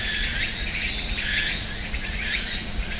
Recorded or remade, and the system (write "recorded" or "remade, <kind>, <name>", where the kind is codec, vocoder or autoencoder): remade, vocoder, Vocos